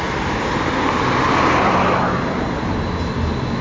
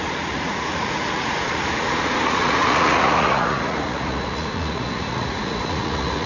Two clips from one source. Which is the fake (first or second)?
second